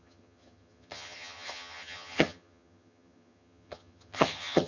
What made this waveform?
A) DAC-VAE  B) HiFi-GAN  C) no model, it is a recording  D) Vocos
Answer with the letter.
B